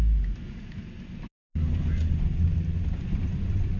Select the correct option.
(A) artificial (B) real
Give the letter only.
B